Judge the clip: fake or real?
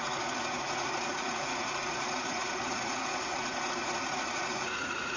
fake